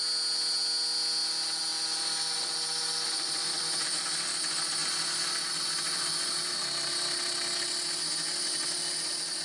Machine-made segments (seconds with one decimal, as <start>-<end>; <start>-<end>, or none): none